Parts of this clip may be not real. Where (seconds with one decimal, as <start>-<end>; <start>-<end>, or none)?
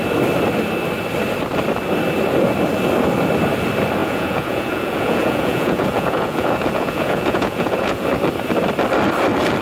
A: 4.0-8.1